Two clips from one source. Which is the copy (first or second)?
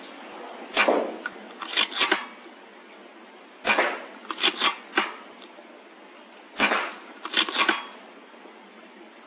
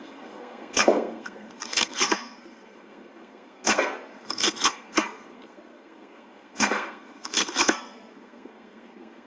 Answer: second